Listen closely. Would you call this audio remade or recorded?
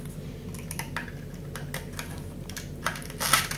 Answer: recorded